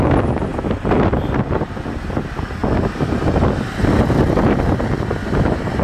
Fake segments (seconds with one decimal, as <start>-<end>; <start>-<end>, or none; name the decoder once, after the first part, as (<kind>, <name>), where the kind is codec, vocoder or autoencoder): none